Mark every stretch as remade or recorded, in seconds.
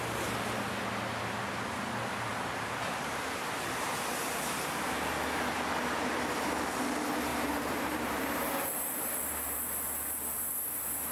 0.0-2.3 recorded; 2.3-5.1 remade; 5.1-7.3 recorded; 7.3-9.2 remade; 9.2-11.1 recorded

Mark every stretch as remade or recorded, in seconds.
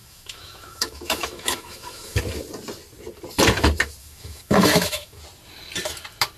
0.0-2.2 remade; 2.2-4.0 recorded; 4.0-5.2 remade; 5.2-6.4 recorded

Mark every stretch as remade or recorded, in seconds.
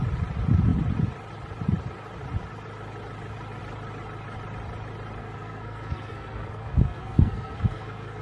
0.0-5.2 recorded; 5.2-8.2 remade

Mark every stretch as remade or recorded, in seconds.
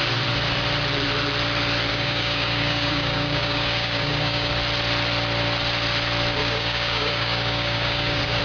0.0-1.9 recorded; 1.9-4.5 remade; 4.5-6.4 recorded; 6.4-8.4 remade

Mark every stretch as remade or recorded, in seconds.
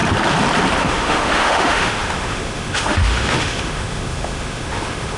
0.0-0.8 recorded; 0.8-5.2 remade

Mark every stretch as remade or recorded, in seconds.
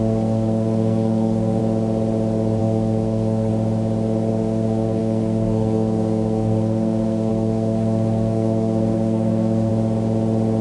0.0-1.6 remade; 1.6-2.6 recorded; 2.6-3.5 remade; 3.5-4.3 recorded; 4.3-9.7 remade; 9.7-10.6 recorded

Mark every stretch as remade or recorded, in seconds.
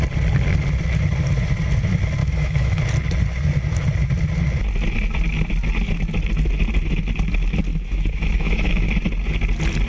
0.0-2.2 recorded; 2.2-2.8 remade; 2.8-7.7 recorded; 7.7-8.9 remade; 8.9-9.9 recorded